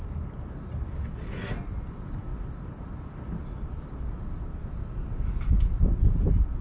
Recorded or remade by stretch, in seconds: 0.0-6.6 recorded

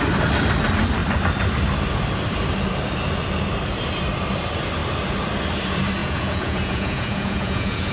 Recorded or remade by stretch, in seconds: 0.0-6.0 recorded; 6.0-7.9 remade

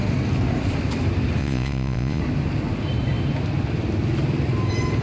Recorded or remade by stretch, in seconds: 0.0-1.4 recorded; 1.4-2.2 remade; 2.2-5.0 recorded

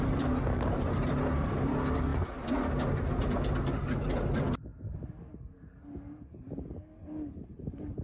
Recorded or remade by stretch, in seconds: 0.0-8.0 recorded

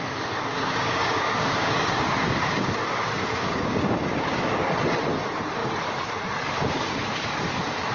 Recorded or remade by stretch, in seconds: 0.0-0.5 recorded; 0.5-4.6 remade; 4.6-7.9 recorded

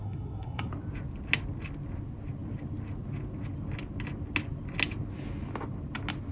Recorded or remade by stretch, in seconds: 0.0-0.7 remade; 0.7-6.3 recorded

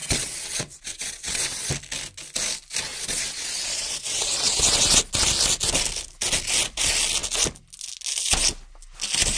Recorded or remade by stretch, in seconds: 0.0-1.7 remade; 1.7-2.9 recorded; 2.9-5.0 remade; 5.0-9.4 recorded

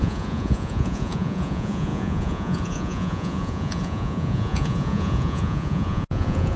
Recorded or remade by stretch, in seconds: 0.0-6.6 remade